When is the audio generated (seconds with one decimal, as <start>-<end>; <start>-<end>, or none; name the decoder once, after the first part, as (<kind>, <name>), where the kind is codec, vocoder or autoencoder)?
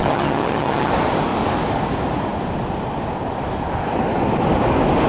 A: 0.0-0.9 (vocoder, HiFi-GAN)